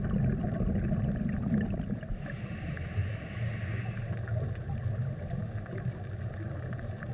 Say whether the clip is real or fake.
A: real